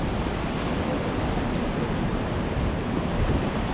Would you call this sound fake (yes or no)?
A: no